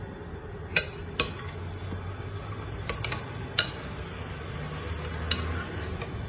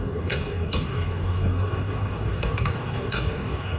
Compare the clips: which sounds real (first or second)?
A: first